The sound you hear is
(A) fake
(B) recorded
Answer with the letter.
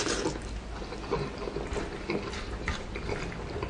B